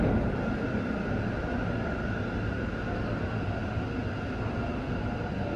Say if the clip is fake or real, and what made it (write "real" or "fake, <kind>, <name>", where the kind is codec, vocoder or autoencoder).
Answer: real